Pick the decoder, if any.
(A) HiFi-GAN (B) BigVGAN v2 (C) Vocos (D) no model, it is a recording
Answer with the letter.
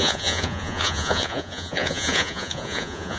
C